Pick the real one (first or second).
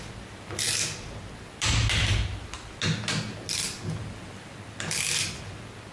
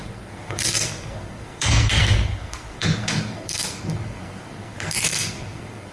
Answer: first